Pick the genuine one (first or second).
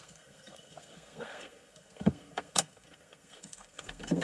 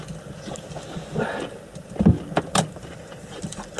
second